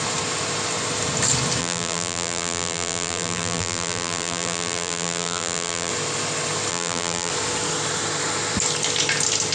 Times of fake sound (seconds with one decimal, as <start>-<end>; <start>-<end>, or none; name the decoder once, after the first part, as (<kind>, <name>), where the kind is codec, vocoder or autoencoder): 1.6-5.9 (vocoder, BigVGAN v2); 6.7-7.3